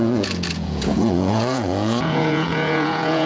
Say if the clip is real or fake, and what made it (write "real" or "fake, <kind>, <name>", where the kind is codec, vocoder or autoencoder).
fake, vocoder, Vocos